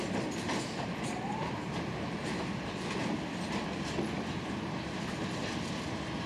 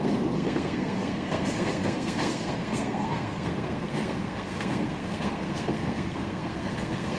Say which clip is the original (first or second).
first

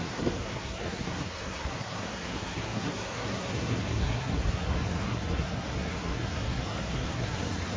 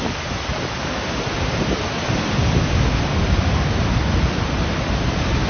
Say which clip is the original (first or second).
second